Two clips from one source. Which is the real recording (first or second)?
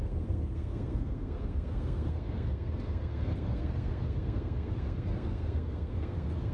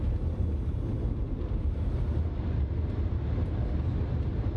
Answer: second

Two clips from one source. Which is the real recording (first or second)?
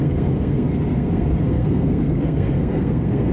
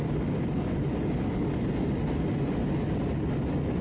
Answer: second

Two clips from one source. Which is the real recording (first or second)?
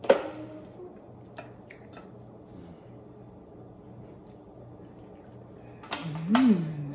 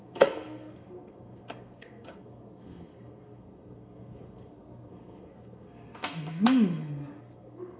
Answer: first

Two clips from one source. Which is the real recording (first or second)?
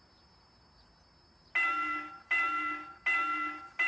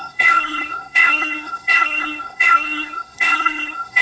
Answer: first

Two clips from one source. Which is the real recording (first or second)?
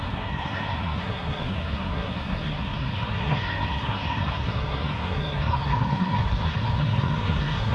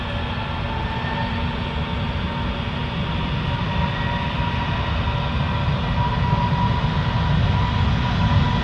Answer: second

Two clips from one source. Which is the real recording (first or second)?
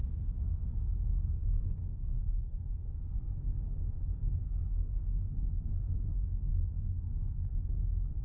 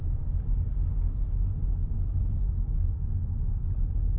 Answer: second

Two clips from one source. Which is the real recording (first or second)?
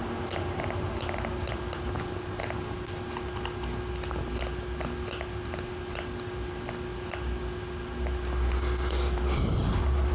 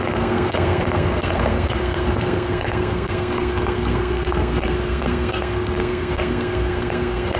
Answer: first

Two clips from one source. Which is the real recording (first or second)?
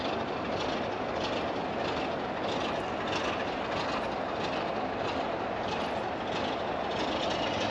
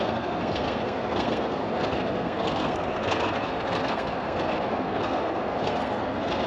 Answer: first